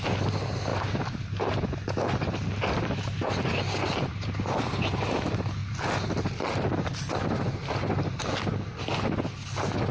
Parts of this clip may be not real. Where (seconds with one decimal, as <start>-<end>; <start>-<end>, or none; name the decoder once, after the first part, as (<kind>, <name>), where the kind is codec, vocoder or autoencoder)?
none